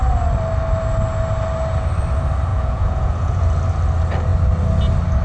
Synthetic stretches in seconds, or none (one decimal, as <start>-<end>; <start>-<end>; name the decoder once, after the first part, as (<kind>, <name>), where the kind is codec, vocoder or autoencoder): 2.5-3.4 (vocoder, Vocos)